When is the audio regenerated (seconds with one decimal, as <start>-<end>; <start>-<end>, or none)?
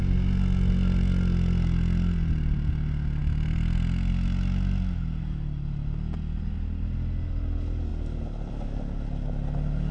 none